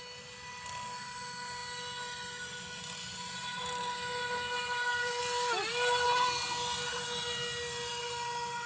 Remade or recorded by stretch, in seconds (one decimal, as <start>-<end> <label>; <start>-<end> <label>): 0.0-8.7 recorded